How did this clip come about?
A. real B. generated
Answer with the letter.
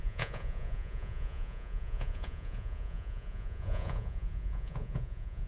B